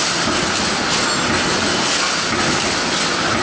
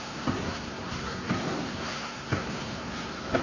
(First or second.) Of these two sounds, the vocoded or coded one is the second